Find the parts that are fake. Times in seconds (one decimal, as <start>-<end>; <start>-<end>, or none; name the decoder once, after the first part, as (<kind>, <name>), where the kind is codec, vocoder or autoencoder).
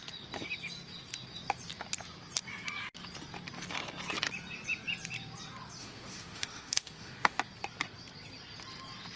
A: 5.8-7.4 (autoencoder, DAC-VAE)